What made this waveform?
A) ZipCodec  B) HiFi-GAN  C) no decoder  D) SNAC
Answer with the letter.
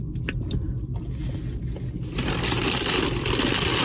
C